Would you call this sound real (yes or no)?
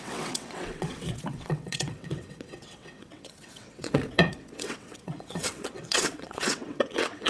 no